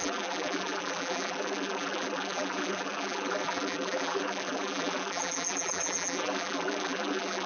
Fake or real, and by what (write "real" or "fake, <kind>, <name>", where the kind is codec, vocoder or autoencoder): fake, vocoder, BigVGAN v2